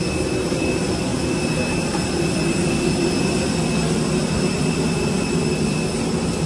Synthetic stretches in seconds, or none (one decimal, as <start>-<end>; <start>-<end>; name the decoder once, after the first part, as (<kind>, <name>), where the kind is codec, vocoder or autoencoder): 4.2-5.5 (vocoder, BigVGAN v2)